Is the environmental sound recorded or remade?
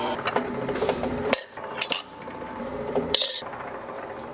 remade